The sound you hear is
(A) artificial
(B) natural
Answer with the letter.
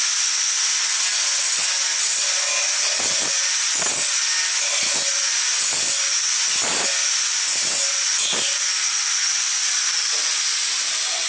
B